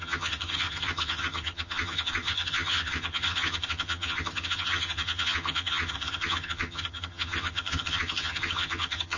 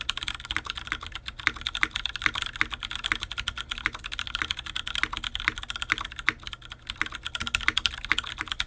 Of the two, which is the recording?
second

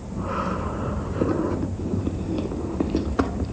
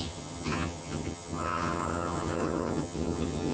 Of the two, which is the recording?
first